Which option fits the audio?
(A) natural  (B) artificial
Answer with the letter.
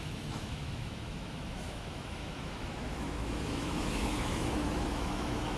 B